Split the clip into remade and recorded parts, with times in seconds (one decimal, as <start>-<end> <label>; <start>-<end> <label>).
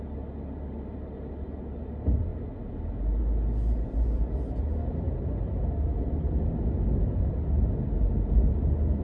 0.0-9.0 recorded